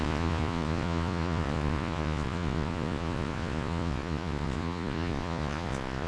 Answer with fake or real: fake